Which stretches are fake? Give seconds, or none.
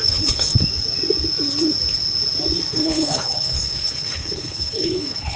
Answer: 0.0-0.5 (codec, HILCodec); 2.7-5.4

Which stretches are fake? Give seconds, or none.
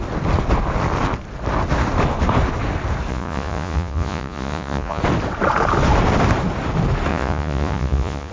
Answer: 3.1-5.0 (vocoder, Vocos); 7.1-8.3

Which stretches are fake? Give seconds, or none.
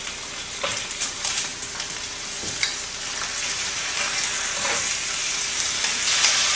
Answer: none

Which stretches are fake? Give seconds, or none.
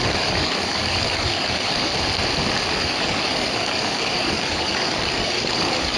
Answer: 0.0-1.9 (codec, DAC); 2.7-6.0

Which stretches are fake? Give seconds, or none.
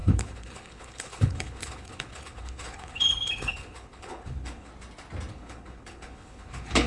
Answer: 0.0-4.7 (codec, HILCodec); 5.3-6.9